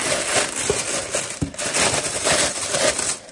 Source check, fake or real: real